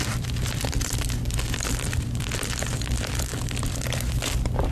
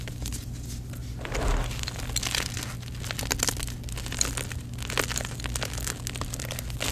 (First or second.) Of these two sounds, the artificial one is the first